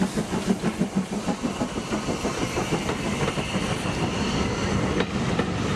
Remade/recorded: recorded